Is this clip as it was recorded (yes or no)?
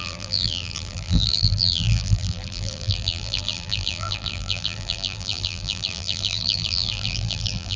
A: no